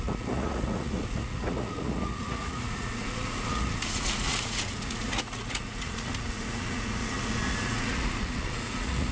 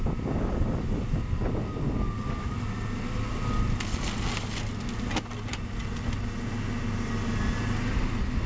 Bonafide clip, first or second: second